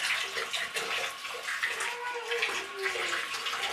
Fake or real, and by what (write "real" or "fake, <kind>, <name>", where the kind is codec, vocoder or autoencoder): real